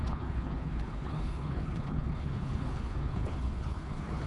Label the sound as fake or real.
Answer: fake